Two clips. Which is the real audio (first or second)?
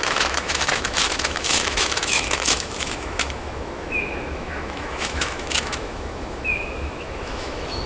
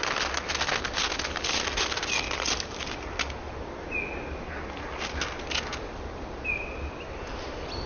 second